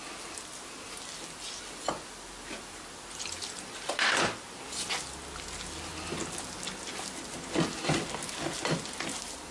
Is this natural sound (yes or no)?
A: yes